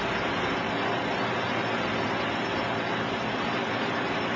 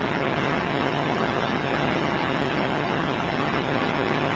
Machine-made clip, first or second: second